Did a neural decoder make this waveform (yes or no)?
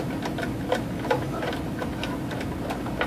no